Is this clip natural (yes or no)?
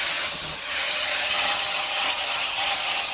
no